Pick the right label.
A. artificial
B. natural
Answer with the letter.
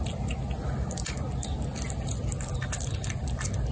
B